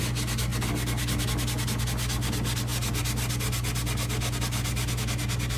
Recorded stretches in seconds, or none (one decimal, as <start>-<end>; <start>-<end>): 0.0-5.6